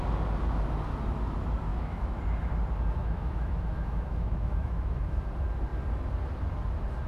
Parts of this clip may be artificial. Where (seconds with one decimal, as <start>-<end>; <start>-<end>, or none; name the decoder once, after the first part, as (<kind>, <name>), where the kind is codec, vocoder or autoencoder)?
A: 1.7-2.2 (autoencoder, DAC-VAE); 3.0-5.2